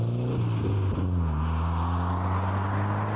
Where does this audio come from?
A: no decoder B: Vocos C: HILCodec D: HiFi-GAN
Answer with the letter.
A